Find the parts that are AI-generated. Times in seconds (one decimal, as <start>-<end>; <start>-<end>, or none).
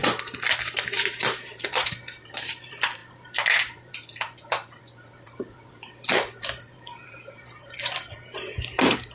1.0-9.1